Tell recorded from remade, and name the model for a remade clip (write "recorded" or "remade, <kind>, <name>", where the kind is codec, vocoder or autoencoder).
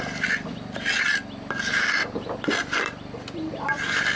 recorded